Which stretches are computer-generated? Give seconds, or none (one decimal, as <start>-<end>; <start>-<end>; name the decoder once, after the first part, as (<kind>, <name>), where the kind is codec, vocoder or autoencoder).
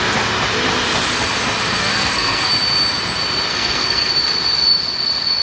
1.8-2.5 (codec, SNAC); 3.5-4.1